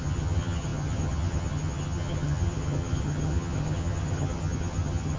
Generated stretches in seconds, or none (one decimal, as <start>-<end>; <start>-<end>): 0.0-5.2